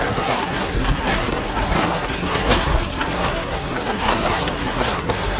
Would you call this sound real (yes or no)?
no